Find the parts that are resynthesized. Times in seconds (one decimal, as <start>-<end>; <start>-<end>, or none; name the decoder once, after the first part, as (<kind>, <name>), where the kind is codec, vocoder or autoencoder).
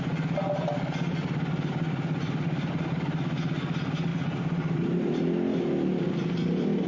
none